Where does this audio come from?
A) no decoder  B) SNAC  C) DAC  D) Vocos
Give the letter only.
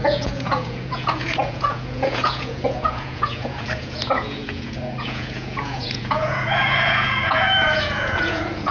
D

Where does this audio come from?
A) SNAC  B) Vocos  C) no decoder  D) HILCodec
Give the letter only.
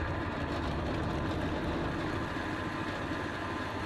C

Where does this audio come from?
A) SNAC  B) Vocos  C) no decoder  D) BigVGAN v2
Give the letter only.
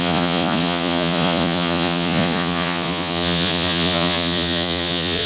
B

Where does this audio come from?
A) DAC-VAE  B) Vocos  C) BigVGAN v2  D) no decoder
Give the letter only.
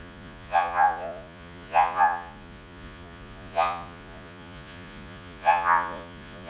B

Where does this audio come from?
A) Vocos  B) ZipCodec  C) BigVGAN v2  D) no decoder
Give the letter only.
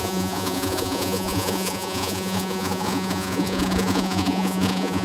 A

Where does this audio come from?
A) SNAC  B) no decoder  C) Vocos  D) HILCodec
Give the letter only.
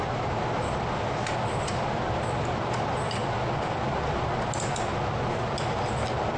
B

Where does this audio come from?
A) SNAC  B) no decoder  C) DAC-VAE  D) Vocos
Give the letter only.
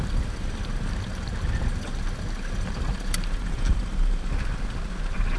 B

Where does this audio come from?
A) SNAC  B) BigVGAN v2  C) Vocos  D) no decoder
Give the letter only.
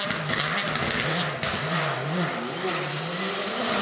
D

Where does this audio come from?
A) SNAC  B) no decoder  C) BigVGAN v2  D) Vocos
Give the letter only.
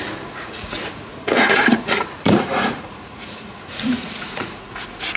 D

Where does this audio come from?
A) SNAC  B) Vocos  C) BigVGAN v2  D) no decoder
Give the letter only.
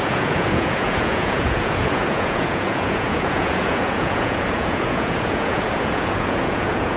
B